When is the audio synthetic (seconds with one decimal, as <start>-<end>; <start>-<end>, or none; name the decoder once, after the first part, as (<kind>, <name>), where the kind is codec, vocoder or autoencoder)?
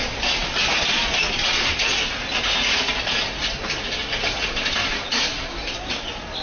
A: none